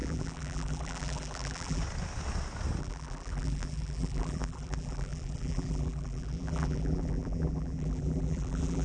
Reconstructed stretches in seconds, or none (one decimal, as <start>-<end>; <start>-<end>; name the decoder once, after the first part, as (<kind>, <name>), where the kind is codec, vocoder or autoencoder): 0.0-1.8 (vocoder, BigVGAN v2); 2.8-8.8